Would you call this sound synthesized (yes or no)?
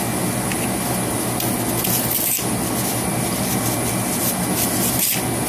no